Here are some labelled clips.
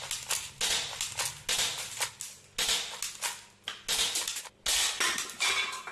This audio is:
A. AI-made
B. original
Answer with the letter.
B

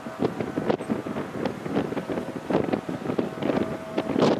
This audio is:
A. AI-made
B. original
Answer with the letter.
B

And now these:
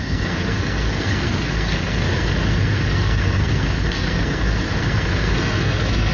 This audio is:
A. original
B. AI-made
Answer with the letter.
B